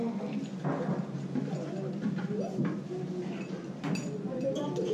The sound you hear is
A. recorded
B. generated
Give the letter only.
A